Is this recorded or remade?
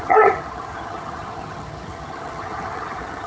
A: remade